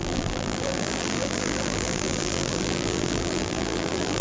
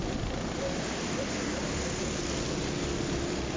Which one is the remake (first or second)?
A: first